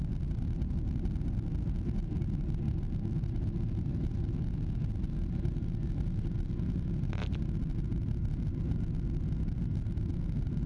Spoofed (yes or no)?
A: no